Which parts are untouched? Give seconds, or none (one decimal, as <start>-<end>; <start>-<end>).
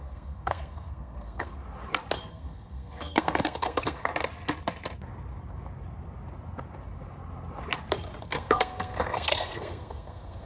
1.6-2.3; 4.1-8.2